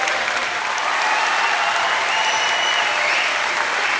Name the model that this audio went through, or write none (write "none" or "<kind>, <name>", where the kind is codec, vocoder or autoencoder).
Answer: none